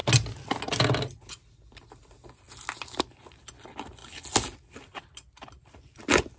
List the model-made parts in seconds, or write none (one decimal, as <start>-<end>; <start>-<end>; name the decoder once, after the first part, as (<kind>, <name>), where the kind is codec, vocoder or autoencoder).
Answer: none